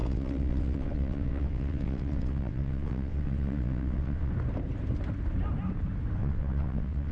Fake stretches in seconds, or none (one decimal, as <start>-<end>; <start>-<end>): 0.0-4.3; 6.2-7.1